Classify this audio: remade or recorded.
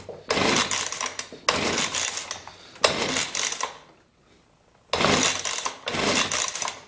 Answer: recorded